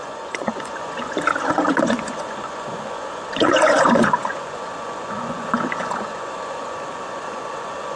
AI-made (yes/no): yes